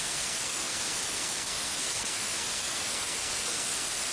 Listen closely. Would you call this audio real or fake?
fake